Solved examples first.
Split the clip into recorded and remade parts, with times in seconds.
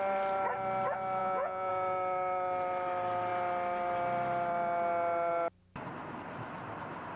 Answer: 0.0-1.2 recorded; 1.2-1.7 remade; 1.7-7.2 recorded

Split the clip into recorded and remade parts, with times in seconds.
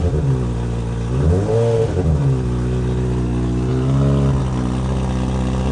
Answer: 0.0-5.7 recorded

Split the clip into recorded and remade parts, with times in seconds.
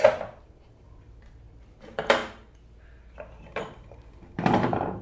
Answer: 0.0-2.2 remade; 2.2-3.4 recorded; 3.4-5.0 remade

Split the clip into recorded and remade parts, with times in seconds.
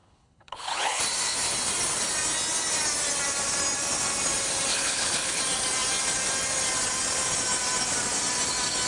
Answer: 0.0-1.0 remade; 1.0-4.7 recorded; 4.7-5.4 remade; 5.4-8.9 recorded